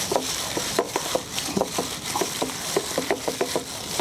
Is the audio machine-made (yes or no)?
no